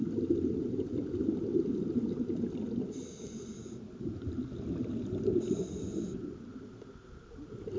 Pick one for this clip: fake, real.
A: real